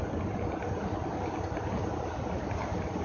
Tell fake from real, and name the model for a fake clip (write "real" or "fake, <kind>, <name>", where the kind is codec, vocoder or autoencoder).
real